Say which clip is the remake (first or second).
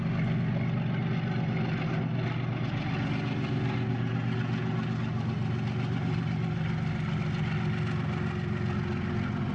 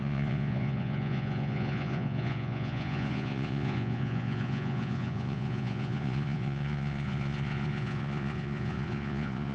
second